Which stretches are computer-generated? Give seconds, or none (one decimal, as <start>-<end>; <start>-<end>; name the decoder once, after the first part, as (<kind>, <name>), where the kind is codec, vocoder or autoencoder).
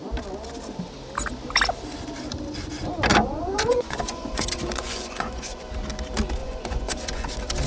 3.1-5.7 (vocoder, Vocos); 6.4-7.3